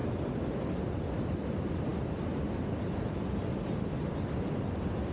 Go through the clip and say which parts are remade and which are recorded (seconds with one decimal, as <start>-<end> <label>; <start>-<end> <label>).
0.0-5.1 recorded